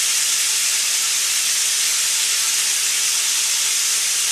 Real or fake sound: real